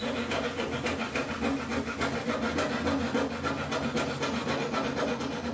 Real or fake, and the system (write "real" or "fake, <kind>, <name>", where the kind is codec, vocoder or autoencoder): real